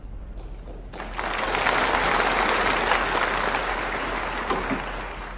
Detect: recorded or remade recorded